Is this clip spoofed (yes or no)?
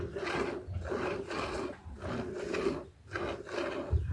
no